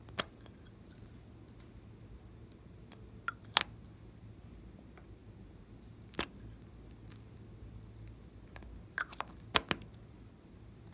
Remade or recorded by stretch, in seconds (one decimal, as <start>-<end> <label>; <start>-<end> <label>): 0.0-10.9 recorded